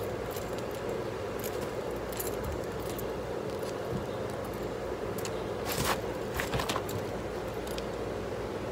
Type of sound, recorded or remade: recorded